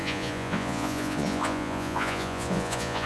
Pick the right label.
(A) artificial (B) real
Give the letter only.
A